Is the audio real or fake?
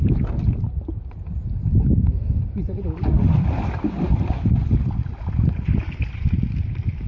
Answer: real